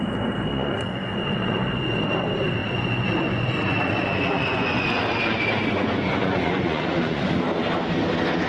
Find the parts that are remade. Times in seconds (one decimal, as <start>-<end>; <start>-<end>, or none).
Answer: 0.5-2.2; 2.6-7.4

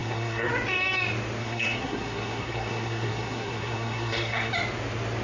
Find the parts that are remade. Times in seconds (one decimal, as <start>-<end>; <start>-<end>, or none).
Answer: 0.0-0.5; 1.4-4.5